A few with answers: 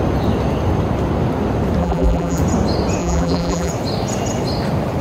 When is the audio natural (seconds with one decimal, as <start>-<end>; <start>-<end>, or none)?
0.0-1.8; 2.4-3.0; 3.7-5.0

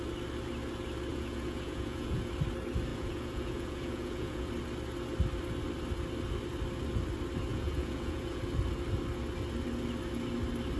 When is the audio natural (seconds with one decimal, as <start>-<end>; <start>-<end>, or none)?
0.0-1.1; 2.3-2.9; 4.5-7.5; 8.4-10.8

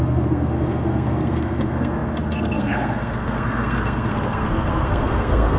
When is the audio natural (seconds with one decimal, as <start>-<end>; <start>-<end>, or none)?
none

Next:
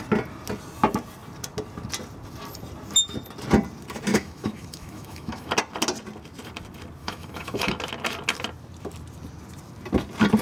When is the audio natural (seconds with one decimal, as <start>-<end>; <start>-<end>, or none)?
0.0-4.1; 5.5-7.0; 7.8-10.4

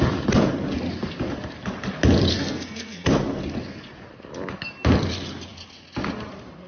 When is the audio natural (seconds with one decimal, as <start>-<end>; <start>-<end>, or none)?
0.0-2.4; 3.1-6.7